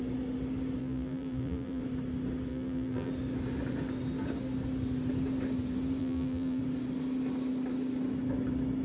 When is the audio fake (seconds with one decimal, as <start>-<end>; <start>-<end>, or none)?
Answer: 0.8-1.8; 2.5-3.1; 6.0-6.6